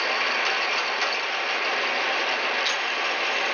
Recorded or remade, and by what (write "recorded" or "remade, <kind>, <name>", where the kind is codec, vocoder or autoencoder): recorded